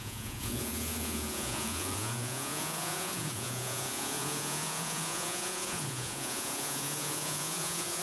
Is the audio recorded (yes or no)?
no